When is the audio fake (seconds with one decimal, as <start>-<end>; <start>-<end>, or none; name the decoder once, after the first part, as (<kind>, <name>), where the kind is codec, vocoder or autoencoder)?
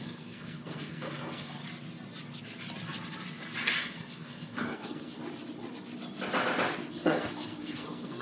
0.0-1.6 (codec, SNAC); 3.8-5.2; 6.9-8.2